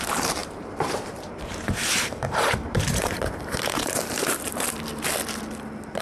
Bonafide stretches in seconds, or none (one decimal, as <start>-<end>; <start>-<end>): 4.9-6.0